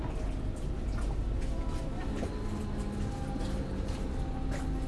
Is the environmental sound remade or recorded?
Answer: recorded